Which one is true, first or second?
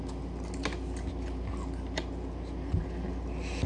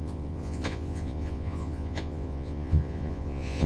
first